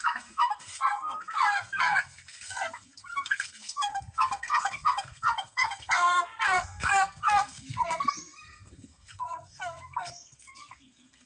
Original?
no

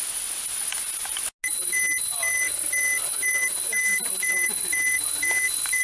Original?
yes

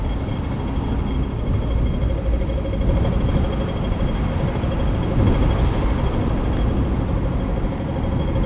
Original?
yes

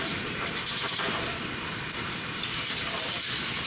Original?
no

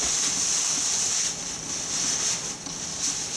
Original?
yes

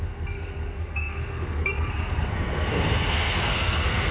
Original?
no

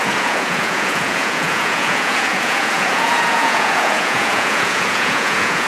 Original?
no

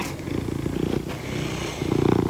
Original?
yes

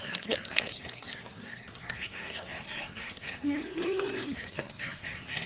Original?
no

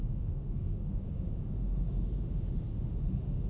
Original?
no